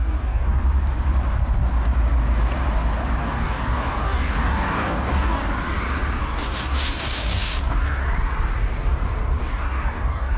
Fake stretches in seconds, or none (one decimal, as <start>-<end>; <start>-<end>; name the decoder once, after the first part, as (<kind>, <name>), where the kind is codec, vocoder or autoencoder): 0.0-0.6 (codec, DAC); 3.2-5.4; 6.2-8.0; 9.4-10.4